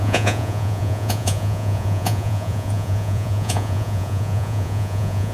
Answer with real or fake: fake